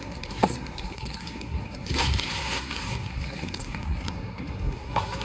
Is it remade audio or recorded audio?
remade